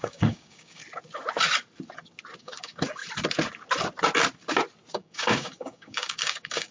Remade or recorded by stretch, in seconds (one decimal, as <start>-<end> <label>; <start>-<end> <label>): 0.0-0.8 remade; 0.8-2.4 recorded; 2.4-3.0 remade; 3.0-4.9 recorded; 4.9-6.7 remade